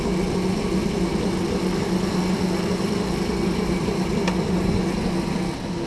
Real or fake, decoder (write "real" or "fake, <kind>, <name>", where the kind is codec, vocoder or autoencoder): real